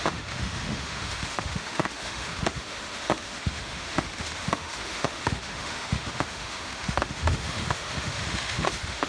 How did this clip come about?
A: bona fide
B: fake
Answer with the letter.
B